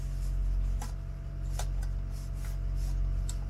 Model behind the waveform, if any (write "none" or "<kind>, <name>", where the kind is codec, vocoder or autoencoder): none